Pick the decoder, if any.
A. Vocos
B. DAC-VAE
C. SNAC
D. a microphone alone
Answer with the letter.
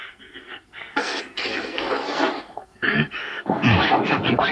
C